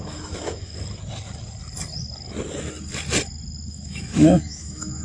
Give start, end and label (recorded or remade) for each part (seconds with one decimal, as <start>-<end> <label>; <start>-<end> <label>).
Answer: 0.0-0.7 remade; 0.7-3.7 recorded; 3.7-5.0 remade